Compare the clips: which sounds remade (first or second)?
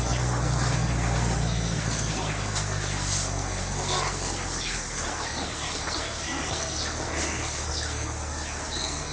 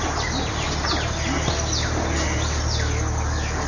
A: first